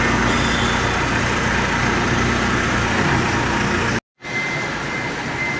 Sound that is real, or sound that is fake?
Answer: real